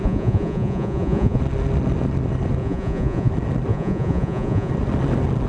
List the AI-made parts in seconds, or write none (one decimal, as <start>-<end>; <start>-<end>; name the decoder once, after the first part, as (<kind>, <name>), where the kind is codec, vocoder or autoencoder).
0.0-1.4 (vocoder, Vocos); 2.6-3.3; 3.7-4.7